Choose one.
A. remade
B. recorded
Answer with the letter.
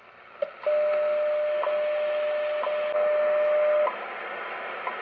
B